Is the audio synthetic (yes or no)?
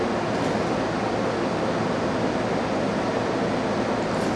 no